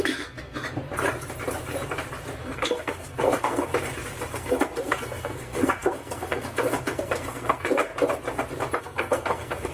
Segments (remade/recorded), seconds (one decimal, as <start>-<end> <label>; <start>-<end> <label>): 0.0-0.6 remade; 0.6-2.4 recorded; 2.4-3.7 remade; 3.7-4.3 recorded; 4.3-7.9 remade; 7.9-8.8 recorded; 8.8-9.7 remade